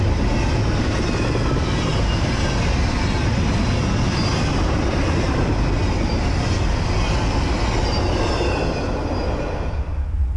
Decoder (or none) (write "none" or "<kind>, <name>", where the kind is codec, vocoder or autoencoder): none